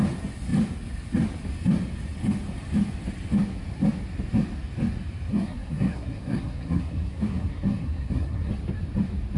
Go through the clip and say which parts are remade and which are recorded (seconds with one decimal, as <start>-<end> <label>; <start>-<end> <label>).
0.0-5.3 recorded; 5.3-8.5 remade; 8.5-9.4 recorded